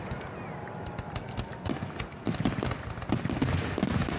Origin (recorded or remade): recorded